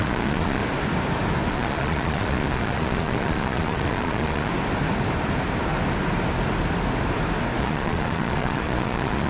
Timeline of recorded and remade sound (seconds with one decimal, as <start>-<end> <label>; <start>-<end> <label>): 0.0-0.6 remade; 0.6-1.5 recorded; 1.5-4.5 remade; 4.5-7.6 recorded; 7.6-9.3 remade